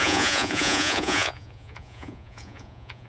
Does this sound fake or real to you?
fake